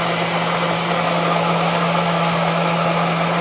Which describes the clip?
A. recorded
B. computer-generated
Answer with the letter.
A